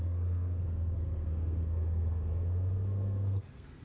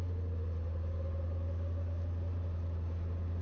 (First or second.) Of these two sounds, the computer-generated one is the first